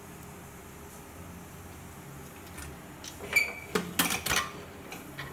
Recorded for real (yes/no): yes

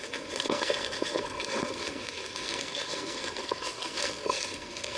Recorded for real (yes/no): no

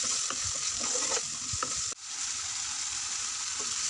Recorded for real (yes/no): yes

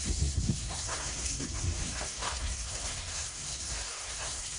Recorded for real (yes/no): no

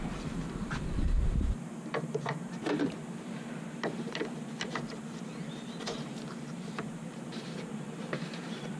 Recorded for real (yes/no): no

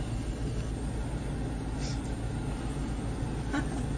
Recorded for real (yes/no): yes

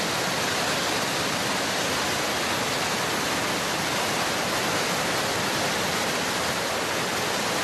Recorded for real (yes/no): yes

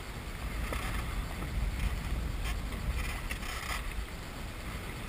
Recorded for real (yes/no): yes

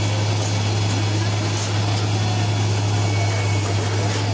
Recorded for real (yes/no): yes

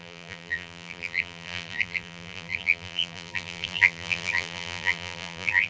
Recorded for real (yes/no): no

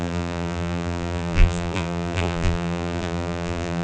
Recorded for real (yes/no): no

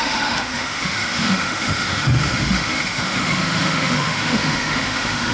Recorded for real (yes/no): no